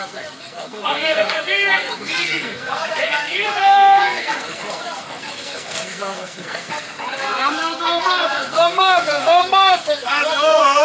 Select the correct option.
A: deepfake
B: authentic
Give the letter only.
A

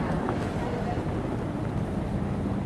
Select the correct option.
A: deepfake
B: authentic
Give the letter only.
B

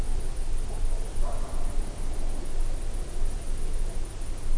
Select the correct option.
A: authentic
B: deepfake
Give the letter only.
A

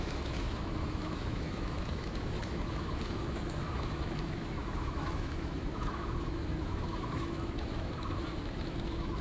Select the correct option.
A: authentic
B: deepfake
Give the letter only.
B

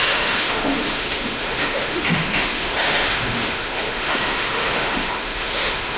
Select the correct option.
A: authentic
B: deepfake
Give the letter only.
B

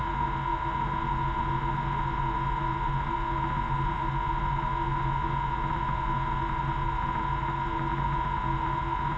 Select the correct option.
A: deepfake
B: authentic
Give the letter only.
B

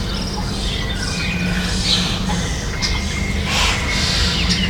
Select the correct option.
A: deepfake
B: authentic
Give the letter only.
B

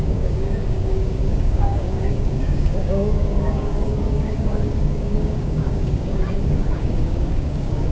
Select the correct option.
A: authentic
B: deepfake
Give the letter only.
B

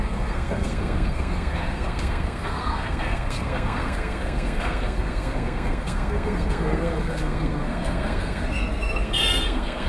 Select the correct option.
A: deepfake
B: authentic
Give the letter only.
A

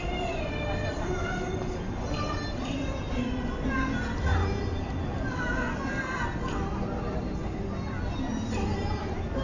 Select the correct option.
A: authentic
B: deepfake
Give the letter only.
B